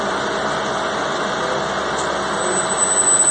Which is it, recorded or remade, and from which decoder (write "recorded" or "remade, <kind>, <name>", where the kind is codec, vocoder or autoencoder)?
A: recorded